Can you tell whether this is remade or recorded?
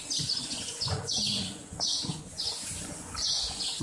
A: remade